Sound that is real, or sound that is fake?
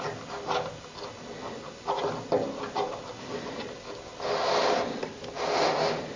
real